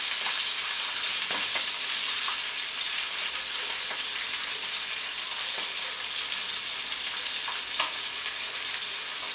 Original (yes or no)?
yes